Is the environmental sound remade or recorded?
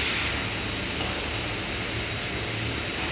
remade